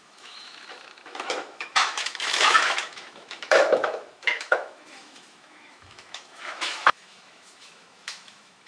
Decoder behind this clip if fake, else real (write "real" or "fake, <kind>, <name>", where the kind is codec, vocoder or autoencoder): fake, autoencoder, DAC-VAE